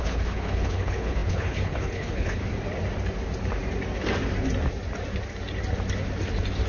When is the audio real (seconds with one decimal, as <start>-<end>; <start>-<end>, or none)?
2.4-6.7